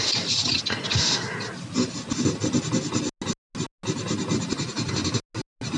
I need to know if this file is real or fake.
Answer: real